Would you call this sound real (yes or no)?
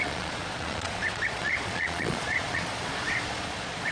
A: no